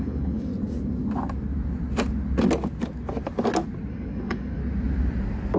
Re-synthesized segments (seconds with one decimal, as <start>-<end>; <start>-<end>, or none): 0.0-0.5; 3.9-4.6